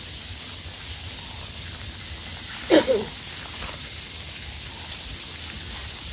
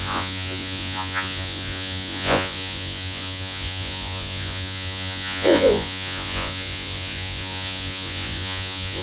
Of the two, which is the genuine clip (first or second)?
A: first